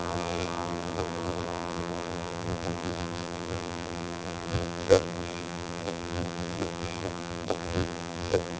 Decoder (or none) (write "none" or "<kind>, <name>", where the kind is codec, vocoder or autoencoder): vocoder, BigVGAN v2